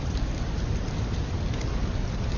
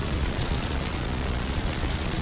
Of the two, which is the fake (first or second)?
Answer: second